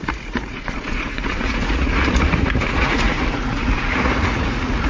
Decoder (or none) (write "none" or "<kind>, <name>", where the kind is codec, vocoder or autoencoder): vocoder, Vocos